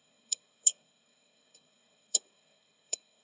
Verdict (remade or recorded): remade